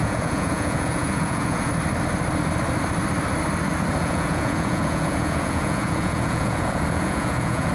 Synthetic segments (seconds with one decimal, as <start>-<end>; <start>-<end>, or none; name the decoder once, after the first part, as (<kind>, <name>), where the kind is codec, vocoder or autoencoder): 0.0-1.7 (vocoder, Vocos); 4.0-7.7